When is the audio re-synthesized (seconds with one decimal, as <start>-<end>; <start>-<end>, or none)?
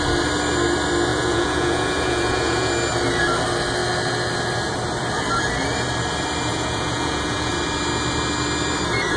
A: 1.1-2.7; 6.5-7.5